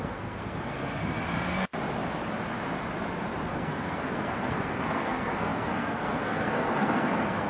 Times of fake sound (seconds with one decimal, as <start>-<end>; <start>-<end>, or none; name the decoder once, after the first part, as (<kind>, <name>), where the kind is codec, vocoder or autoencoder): 0.0-1.0 (codec, SNAC); 3.5-7.5

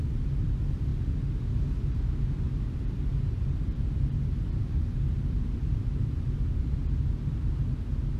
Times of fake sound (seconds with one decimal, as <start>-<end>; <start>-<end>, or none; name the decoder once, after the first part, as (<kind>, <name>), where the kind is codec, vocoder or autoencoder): 0.0-0.9 (vocoder, BigVGAN v2); 2.3-8.2

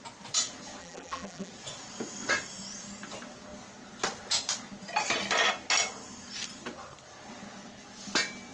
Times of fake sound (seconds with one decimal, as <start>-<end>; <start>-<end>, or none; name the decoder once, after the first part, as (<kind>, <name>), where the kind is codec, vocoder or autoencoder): 0.8-1.5 (vocoder, BigVGAN v2)

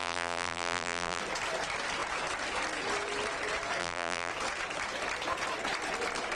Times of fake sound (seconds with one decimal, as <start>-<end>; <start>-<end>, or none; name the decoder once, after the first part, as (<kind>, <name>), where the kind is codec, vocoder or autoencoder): 0.0-1.2 (vocoder, BigVGAN v2); 3.8-4.3

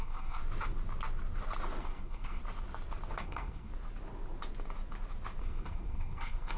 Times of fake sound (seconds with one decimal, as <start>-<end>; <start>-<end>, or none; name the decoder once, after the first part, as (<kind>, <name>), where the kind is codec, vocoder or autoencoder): 0.0-0.4 (codec, SNAC); 1.8-2.4; 3.2-3.7; 5.4-6.6

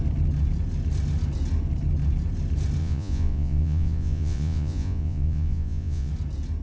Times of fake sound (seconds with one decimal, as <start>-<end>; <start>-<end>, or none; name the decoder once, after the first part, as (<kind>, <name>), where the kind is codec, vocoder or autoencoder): 2.8-6.1 (vocoder, Vocos)

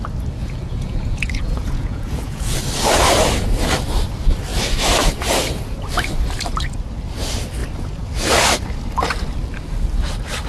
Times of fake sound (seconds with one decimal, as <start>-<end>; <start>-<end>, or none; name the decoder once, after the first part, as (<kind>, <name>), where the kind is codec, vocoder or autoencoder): 0.4-2.6 (vocoder, Vocos)

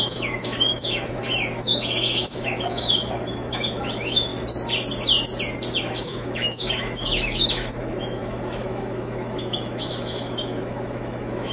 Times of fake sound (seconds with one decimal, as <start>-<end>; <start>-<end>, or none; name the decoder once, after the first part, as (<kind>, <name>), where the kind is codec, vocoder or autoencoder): 0.0-4.3 (autoencoder, DAC-VAE); 5.8-11.5